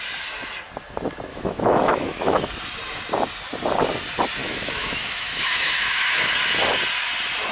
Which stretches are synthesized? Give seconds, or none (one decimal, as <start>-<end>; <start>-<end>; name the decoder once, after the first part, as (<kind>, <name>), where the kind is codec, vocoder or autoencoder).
1.3-2.4 (autoencoder, DAC-VAE); 4.4-6.2